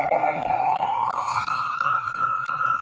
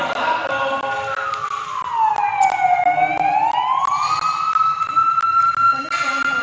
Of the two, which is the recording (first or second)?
second